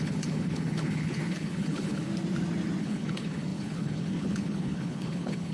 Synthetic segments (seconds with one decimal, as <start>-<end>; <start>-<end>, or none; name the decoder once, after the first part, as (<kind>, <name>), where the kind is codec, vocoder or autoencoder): 0.0-2.1 (codec, HILCodec); 2.8-5.5